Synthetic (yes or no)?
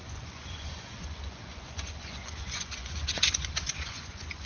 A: yes